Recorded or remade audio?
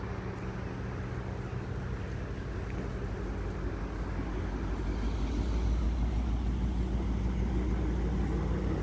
recorded